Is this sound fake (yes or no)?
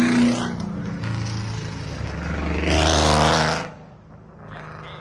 no